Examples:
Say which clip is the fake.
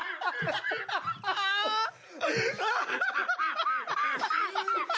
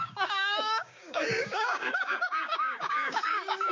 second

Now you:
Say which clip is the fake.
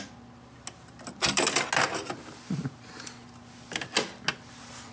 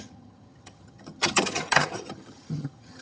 second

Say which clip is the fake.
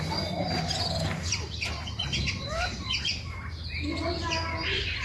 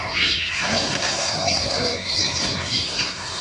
second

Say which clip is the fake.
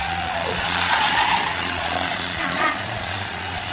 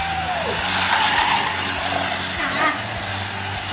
first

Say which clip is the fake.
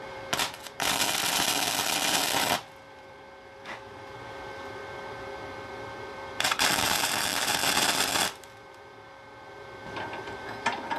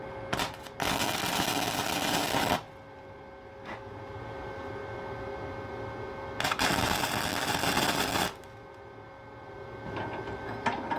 first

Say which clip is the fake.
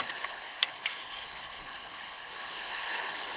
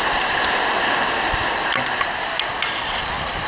first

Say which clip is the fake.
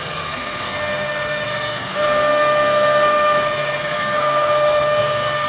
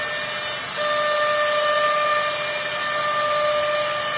first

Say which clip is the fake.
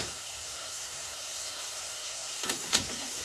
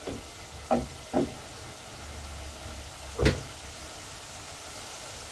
first